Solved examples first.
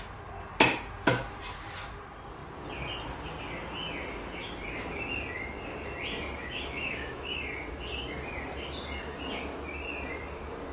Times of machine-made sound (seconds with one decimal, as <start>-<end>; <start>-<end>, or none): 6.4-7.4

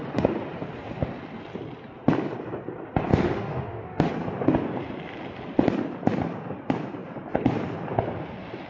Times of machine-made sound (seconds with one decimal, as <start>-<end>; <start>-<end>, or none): 3.1-4.1

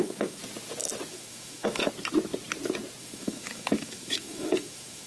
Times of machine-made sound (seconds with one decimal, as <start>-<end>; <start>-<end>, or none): 0.0-0.4; 1.1-1.8; 3.0-5.1

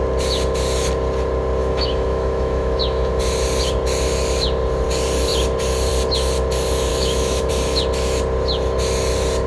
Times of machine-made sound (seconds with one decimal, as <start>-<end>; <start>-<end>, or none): 1.6-3.2; 6.9-7.5

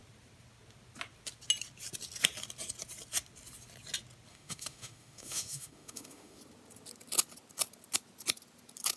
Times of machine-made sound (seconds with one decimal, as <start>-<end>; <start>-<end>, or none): 4.3-6.4

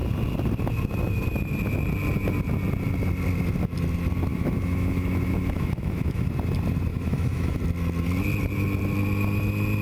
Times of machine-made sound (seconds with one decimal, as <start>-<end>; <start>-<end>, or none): 4.3-6.3; 6.9-7.6

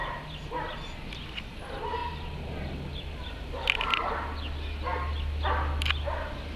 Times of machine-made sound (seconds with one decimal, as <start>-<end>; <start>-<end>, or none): none